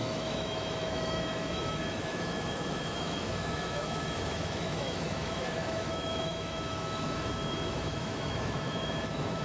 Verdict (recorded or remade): remade